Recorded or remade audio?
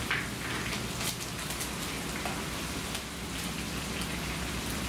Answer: recorded